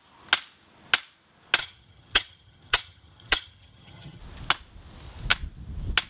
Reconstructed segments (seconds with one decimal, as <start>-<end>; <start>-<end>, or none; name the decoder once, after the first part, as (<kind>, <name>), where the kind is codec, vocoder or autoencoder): 1.6-4.2 (vocoder, HiFi-GAN)